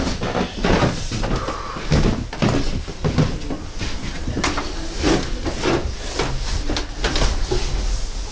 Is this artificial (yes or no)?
no